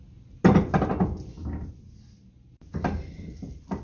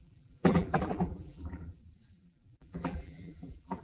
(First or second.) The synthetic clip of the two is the second